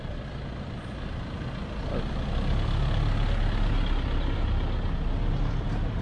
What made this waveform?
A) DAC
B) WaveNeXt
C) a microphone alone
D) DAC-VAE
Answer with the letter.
C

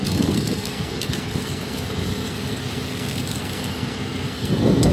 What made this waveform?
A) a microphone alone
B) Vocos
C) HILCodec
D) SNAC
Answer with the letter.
D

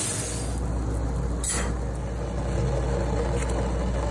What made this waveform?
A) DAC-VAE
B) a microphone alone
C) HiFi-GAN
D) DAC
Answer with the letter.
B